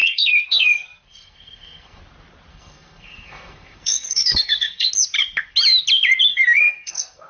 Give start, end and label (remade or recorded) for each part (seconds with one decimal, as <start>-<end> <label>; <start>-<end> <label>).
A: 0.0-2.0 remade; 2.0-2.5 recorded; 2.5-4.9 remade; 4.9-6.3 recorded; 6.3-7.3 remade